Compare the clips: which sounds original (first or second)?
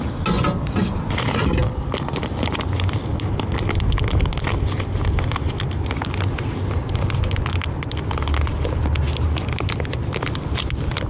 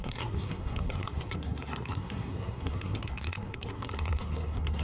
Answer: first